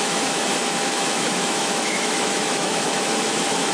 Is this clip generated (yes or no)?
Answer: yes